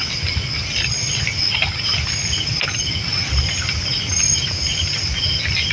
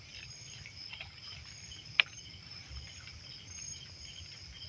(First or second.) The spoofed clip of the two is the second